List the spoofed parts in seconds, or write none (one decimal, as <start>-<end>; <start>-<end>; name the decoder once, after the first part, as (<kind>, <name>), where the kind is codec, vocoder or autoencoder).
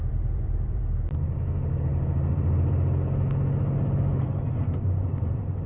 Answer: 0.0-0.8 (vocoder, BigVGAN v2); 1.9-2.7